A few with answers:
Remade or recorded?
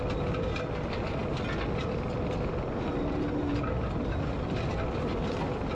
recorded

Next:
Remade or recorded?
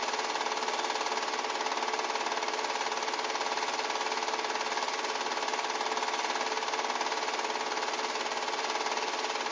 recorded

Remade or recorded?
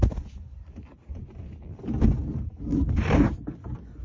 recorded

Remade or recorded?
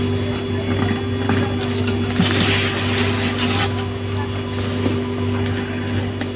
recorded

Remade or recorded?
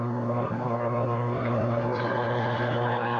remade